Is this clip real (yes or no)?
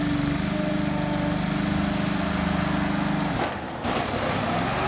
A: yes